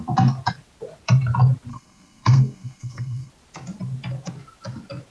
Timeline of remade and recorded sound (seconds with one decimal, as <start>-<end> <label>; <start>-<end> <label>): 0.0-1.7 recorded; 1.7-3.3 remade; 3.3-5.1 recorded

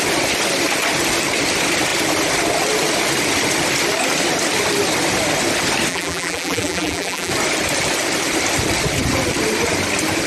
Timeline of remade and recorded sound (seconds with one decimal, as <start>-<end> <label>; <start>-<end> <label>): 0.0-5.9 recorded; 5.9-7.3 remade; 7.3-10.3 recorded

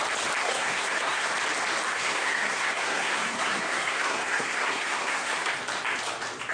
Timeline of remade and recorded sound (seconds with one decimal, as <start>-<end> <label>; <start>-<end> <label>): 0.0-0.4 recorded; 0.4-1.3 remade; 1.3-1.9 recorded; 1.9-5.5 remade; 5.5-6.5 recorded

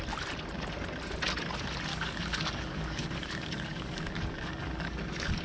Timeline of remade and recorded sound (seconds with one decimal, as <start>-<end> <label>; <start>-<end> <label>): 0.0-1.9 recorded; 1.9-5.4 remade